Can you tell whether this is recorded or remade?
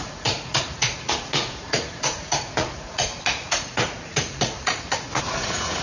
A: remade